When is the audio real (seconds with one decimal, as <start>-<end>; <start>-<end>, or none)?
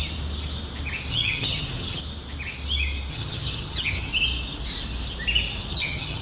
0.0-1.1; 2.0-3.1; 4.1-5.7